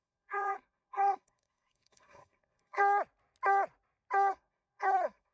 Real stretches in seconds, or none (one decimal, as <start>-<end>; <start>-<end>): 2.8-4.3